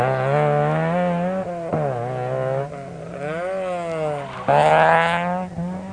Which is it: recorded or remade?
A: recorded